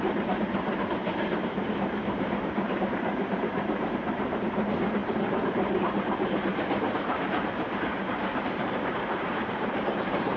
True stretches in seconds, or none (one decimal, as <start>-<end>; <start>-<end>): 1.0-1.6